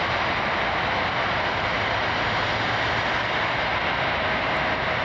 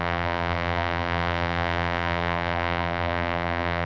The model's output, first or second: second